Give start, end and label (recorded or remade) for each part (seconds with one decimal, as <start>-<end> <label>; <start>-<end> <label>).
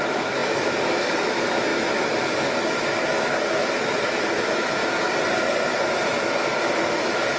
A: 0.0-4.8 remade; 4.8-6.6 recorded; 6.6-7.4 remade